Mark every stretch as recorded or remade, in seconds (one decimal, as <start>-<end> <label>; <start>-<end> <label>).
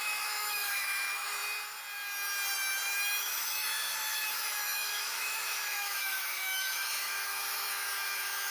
0.0-1.4 remade; 1.4-3.2 recorded; 3.2-8.5 remade